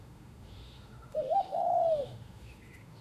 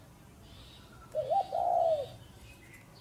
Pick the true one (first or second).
second